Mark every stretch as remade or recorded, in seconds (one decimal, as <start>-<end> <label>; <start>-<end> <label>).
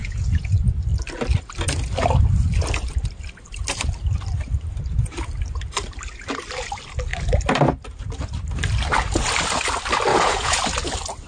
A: 0.0-0.5 remade; 0.5-10.1 recorded; 10.1-10.6 remade; 10.6-11.3 recorded